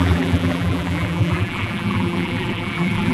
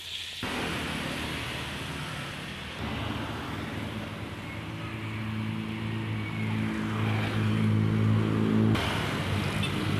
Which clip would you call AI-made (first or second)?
first